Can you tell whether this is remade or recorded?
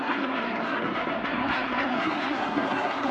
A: remade